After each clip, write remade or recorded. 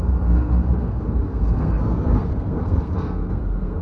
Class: remade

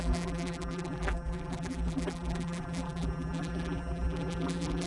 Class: remade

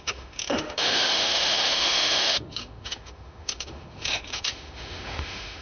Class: remade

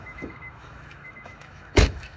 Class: remade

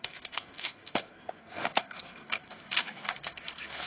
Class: remade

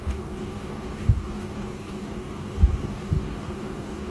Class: remade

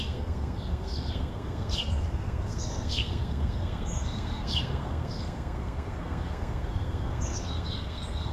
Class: remade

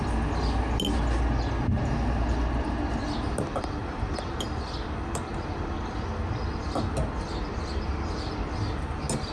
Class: recorded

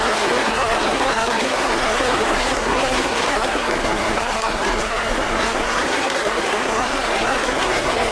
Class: remade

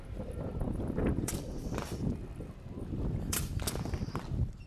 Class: remade